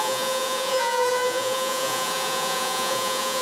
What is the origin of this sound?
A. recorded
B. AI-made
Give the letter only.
B